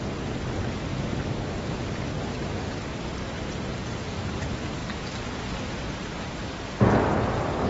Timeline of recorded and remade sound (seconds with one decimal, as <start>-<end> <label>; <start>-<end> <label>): 0.0-0.9 recorded; 0.9-1.8 remade; 1.8-7.7 recorded